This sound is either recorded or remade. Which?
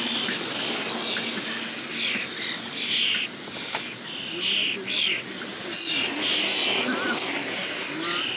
recorded